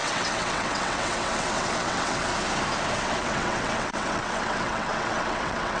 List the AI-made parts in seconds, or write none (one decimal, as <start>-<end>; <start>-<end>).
0.0-2.3; 2.9-5.8

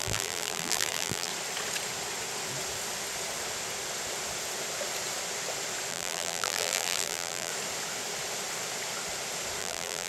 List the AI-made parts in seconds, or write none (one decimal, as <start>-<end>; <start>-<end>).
0.0-1.3; 5.9-7.5; 9.6-10.1

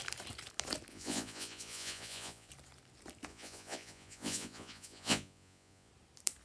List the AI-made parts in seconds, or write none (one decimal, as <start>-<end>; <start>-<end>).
0.9-2.5; 3.3-5.9

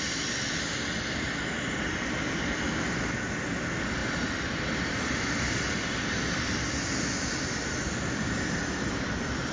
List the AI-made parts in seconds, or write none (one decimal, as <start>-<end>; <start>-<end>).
none

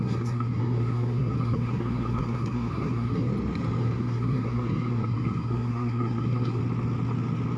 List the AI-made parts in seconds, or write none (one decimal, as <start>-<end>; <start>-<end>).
0.0-3.3; 3.8-6.6

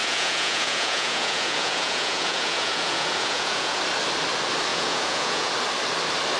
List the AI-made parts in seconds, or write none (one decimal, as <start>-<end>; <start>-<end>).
0.0-3.8; 4.7-5.5